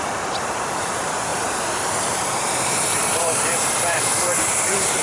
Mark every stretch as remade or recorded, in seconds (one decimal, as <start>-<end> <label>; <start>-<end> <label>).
0.0-5.0 remade

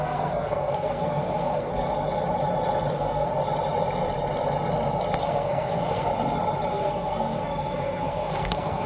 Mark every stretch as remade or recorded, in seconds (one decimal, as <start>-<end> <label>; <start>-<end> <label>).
0.0-1.7 remade; 1.7-2.9 recorded; 2.9-3.3 remade; 3.3-5.2 recorded; 5.2-6.1 remade; 6.1-6.7 recorded; 6.7-8.9 remade

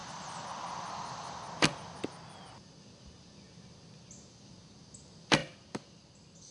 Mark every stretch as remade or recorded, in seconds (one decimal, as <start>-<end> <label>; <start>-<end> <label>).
0.0-6.5 recorded

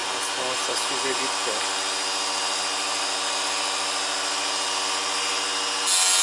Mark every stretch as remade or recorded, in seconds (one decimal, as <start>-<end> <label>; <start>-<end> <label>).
0.0-6.2 recorded

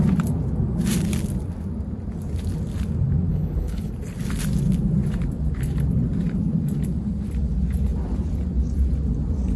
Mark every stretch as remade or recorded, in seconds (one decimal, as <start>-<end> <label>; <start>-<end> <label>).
0.0-3.3 recorded; 3.3-3.9 remade; 3.9-9.6 recorded

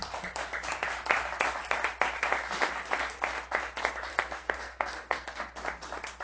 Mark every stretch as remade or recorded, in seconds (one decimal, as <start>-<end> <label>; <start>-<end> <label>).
0.0-4.1 recorded; 4.1-5.4 remade; 5.4-6.2 recorded